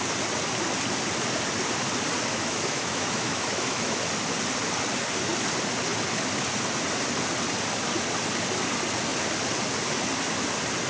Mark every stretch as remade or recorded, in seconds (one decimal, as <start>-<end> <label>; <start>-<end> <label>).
0.0-2.3 recorded; 2.3-3.9 remade; 3.9-10.9 recorded

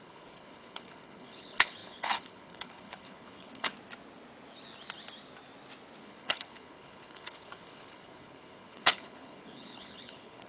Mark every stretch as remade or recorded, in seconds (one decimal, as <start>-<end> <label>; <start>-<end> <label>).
0.0-3.7 remade; 3.7-6.0 recorded; 6.0-10.5 remade

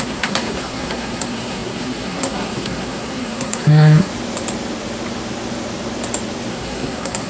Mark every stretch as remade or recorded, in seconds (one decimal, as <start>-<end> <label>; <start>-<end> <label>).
0.0-4.1 remade; 4.1-6.5 recorded; 6.5-7.3 remade

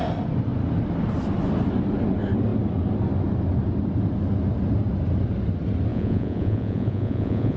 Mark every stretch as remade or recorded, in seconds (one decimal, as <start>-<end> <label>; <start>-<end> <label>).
0.0-5.9 recorded; 5.9-7.6 remade

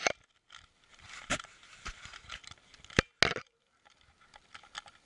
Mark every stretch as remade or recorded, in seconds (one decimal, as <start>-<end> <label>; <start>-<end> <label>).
0.0-0.9 recorded; 0.9-2.3 remade; 2.3-5.1 recorded